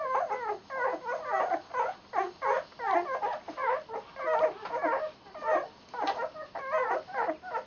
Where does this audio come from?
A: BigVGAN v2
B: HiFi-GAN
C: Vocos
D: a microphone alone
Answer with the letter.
D